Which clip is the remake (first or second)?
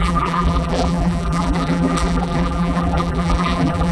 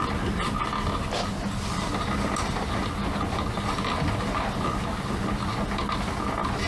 first